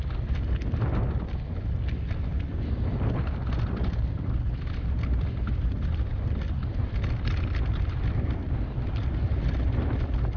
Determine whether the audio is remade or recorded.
recorded